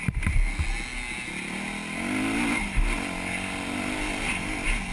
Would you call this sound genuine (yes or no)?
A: yes